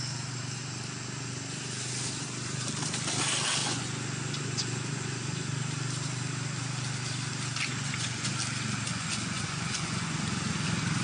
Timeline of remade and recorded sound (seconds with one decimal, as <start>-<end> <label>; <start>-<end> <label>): 0.0-3.6 recorded; 3.6-5.5 remade; 5.5-7.7 recorded; 7.7-8.3 remade; 8.3-8.9 recorded; 8.9-10.2 remade; 10.2-11.0 recorded